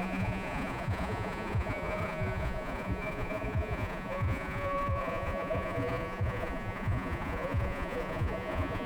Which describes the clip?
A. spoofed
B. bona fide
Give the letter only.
A